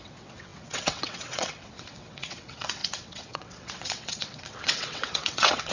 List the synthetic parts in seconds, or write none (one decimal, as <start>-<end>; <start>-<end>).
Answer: 0.0-5.7